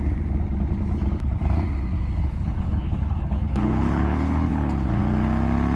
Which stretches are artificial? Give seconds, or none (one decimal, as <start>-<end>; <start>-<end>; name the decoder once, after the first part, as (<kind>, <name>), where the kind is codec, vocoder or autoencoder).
2.2-5.0 (codec, HILCodec)